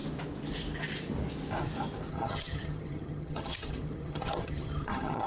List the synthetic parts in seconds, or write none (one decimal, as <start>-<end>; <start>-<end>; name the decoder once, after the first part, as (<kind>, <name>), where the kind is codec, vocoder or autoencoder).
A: 2.1-5.3 (vocoder, HiFi-GAN)